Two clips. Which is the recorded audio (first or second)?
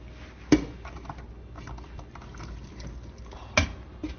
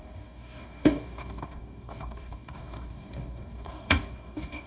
first